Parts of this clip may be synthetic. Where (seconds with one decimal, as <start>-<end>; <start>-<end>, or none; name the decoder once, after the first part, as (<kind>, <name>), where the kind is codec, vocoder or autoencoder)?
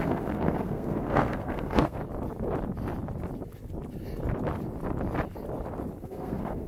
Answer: 0.0-2.0 (codec, SNAC); 6.0-6.7